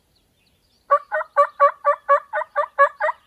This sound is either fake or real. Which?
real